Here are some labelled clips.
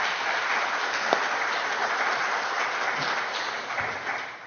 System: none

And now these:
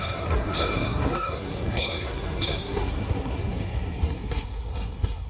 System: codec, SNAC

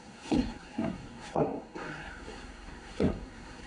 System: codec, SNAC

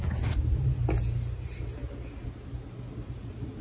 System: none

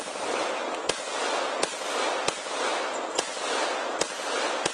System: none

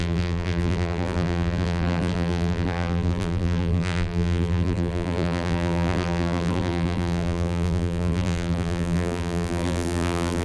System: vocoder, BigVGAN v2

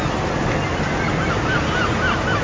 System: none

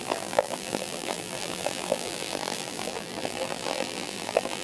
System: vocoder, BigVGAN v2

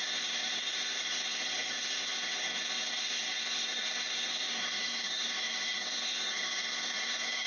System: codec, SNAC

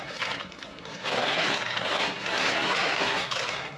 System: codec, SNAC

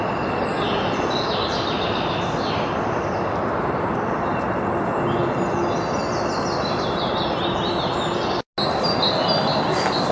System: none